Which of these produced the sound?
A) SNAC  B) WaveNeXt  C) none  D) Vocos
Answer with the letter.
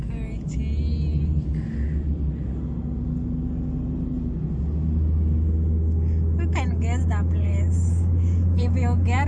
C